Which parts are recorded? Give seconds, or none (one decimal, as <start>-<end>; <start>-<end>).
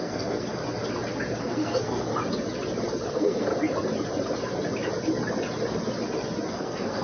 0.6-1.4; 2.1-3.1; 3.5-6.5